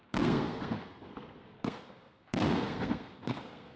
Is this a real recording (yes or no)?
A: no